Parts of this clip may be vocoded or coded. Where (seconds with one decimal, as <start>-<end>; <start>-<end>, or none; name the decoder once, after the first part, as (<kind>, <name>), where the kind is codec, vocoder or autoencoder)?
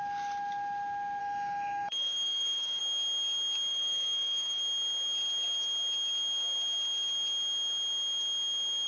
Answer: 1.2-2.8 (codec, DAC); 3.7-4.6